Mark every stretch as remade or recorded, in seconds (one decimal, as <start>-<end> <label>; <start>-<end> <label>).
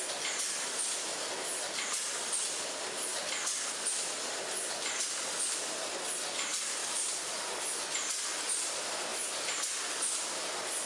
0.0-10.9 recorded